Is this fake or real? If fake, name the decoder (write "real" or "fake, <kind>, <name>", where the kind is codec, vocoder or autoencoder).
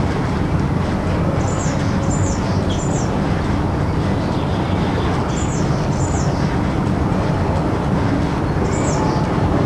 real